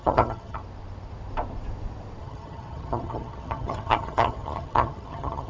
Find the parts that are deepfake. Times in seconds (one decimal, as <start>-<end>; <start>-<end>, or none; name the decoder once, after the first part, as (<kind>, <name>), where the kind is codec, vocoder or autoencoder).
0.0-0.6 (vocoder, HiFi-GAN); 2.2-5.5